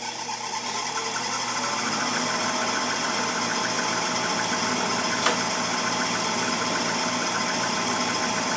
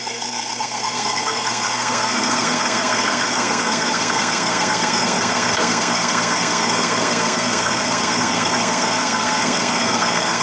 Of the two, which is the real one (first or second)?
first